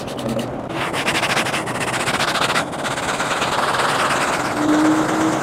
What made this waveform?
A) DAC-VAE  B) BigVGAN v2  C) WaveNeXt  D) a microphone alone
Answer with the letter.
D